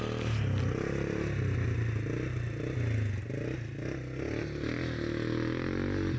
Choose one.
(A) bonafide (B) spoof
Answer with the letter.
A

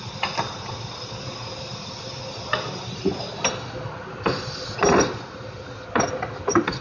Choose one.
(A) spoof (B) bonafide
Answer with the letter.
B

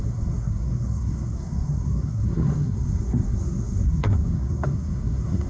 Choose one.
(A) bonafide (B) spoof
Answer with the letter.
B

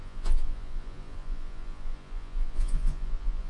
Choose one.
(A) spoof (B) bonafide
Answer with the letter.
A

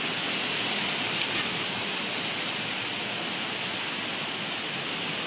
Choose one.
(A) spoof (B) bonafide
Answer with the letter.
B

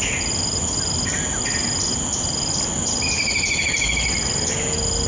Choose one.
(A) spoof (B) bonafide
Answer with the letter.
B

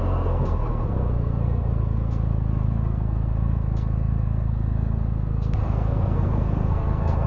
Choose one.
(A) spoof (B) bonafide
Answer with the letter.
A